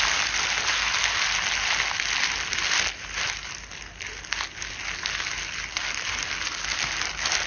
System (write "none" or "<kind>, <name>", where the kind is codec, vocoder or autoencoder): none